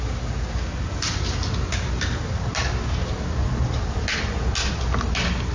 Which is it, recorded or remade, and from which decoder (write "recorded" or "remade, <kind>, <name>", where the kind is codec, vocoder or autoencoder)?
recorded